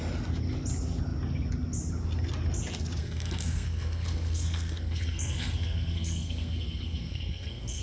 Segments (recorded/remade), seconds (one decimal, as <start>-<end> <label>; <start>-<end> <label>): 0.0-3.0 recorded; 3.0-7.8 remade